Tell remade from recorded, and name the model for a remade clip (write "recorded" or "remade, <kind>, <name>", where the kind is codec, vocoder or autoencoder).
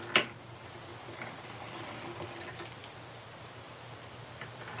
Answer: recorded